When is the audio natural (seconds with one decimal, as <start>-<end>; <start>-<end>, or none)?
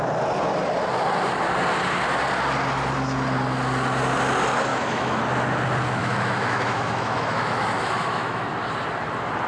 0.0-4.7; 5.2-6.0; 8.5-9.5